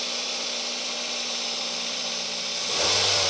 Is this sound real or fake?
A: real